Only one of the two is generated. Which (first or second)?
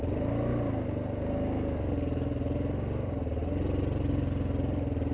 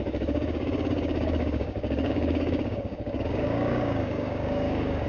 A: second